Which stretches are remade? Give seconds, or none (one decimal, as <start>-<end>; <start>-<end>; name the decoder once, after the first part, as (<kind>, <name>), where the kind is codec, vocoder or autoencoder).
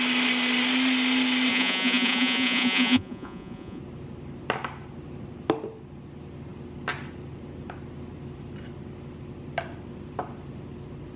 1.5-3.8 (vocoder, Vocos)